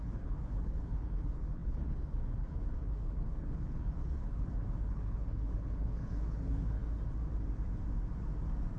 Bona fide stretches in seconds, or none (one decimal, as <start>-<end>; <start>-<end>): 6.8-8.8